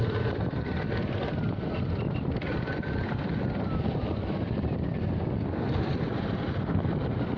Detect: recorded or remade remade